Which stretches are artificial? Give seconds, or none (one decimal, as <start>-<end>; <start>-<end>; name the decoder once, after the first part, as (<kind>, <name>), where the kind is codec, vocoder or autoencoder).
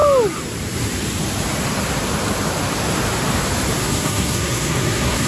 3.8-5.3 (codec, SNAC)